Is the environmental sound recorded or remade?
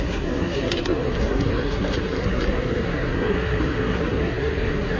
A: remade